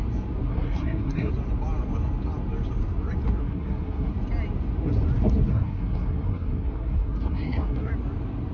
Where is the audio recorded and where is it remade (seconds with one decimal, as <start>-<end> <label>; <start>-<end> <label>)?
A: 0.0-0.5 recorded; 0.5-1.3 remade; 1.3-3.4 recorded; 3.4-4.1 remade; 4.1-5.5 recorded; 5.5-7.9 remade; 7.9-8.5 recorded